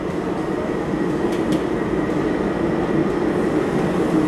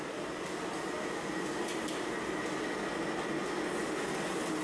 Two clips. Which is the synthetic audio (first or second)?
first